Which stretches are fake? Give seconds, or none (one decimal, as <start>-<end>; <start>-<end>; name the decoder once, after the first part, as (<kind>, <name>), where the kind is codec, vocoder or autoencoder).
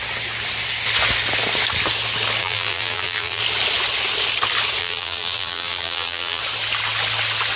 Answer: 2.4-3.4 (vocoder, BigVGAN v2); 4.8-6.4